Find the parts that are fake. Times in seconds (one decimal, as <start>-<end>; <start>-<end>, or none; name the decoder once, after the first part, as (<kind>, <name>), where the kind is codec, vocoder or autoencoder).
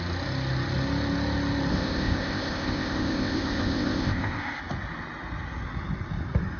1.7-4.6 (codec, ZipCodec)